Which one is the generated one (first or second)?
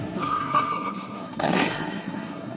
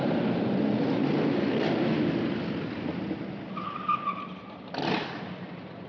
first